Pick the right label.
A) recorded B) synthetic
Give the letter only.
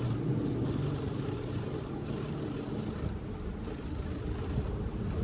B